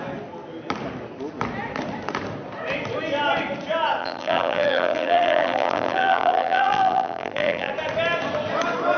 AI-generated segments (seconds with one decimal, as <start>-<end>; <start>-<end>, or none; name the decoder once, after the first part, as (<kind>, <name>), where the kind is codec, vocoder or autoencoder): 4.0-7.7 (vocoder, BigVGAN v2)